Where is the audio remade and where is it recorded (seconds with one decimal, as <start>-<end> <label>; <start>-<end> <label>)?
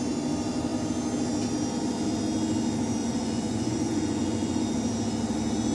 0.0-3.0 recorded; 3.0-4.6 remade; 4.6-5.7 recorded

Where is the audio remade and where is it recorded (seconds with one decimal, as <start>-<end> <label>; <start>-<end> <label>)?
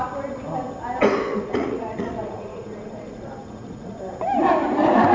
0.0-1.3 recorded; 1.3-4.0 remade; 4.0-5.1 recorded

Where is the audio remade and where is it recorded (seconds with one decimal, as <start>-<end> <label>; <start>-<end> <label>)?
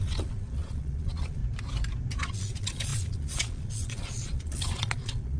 0.0-1.4 remade; 1.4-2.2 recorded; 2.2-5.4 remade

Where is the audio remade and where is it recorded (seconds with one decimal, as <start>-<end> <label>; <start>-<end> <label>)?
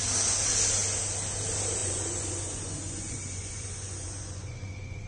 0.0-1.8 recorded; 1.8-5.1 remade